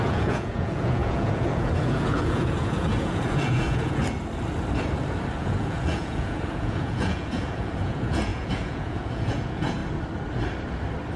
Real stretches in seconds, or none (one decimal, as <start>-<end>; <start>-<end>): 4.0-5.4; 9.8-11.2